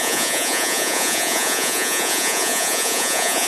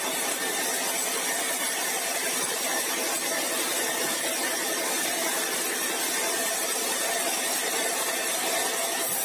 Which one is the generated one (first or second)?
first